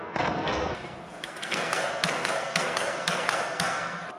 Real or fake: fake